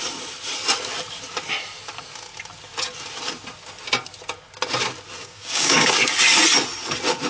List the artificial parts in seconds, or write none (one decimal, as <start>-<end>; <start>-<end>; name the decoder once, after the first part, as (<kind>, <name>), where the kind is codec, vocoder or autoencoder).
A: 5.2-5.9 (codec, DAC)